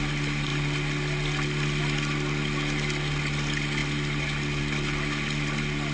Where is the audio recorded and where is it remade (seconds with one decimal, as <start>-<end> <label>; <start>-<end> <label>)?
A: 0.0-5.9 recorded